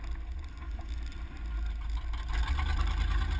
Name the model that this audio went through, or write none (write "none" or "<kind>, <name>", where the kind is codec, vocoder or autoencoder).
none